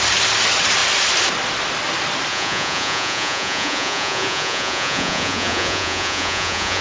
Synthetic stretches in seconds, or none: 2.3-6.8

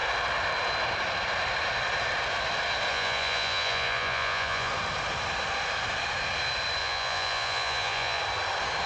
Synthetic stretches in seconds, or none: 2.9-4.7; 6.8-8.2

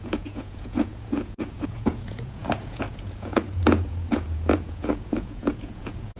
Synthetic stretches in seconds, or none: 0.0-6.2

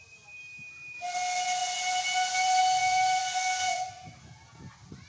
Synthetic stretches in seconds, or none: none

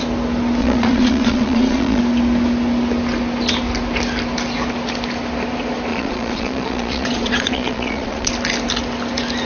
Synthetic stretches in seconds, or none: 0.6-2.0; 5.9-8.3

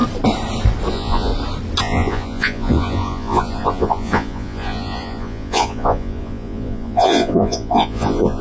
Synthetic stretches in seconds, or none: 0.9-1.3; 1.8-8.4